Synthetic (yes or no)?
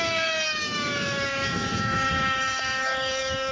yes